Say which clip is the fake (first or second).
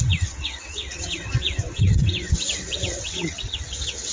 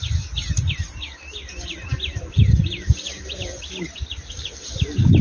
first